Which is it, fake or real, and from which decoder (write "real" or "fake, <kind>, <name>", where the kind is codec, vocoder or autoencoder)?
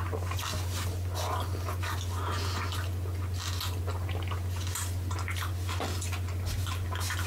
real